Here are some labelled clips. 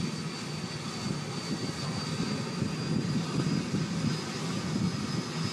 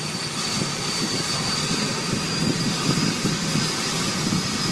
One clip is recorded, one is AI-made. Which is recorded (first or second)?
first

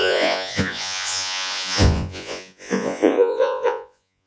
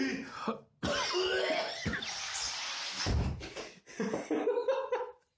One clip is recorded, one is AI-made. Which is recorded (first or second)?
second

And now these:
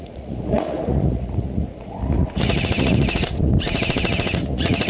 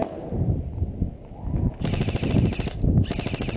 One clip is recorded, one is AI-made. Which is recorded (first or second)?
second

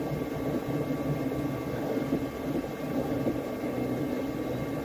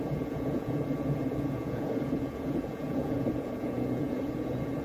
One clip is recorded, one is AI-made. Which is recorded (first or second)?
first